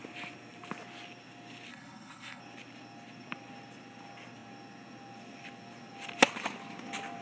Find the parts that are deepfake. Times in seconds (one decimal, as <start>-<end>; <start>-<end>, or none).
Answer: 1.7-2.4